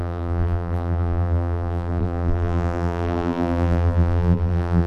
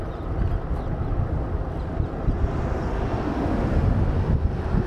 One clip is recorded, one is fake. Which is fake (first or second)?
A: first